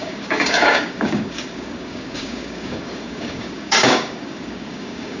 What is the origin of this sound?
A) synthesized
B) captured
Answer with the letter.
A